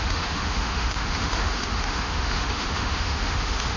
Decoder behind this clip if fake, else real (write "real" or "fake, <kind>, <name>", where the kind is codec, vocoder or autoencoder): fake, autoencoder, DAC-VAE